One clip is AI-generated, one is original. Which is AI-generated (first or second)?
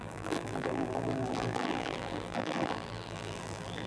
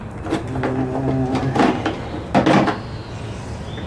first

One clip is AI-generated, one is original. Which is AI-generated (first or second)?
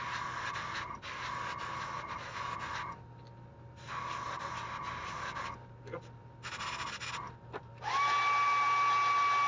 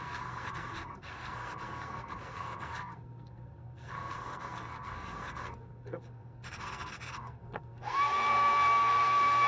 second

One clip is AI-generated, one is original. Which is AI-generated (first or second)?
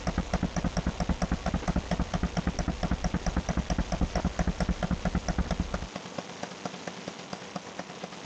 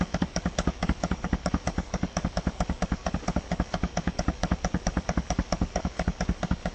second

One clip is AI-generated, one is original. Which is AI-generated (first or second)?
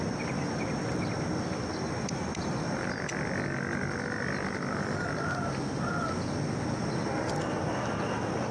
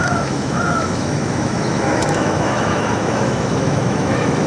second